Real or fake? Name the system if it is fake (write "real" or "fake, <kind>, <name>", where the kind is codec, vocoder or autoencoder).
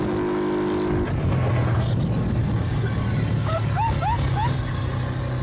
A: real